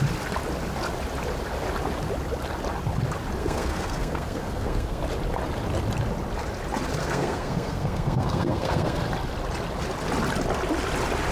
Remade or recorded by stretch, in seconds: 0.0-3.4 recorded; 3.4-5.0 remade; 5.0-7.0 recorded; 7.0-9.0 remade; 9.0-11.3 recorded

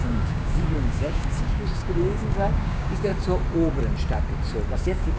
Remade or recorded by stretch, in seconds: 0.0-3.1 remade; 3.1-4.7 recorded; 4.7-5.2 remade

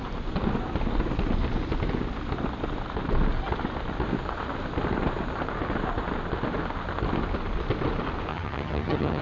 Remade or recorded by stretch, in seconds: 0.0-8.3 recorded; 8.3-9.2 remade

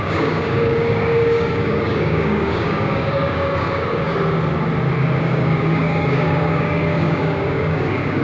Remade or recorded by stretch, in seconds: 0.0-4.1 remade; 4.1-5.2 recorded; 5.2-8.2 remade